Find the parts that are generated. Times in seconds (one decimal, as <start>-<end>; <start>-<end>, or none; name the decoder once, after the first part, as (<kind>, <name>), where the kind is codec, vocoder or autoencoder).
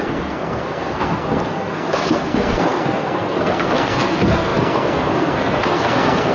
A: 0.0-6.3 (codec, SNAC)